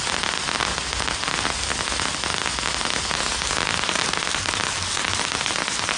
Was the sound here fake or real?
real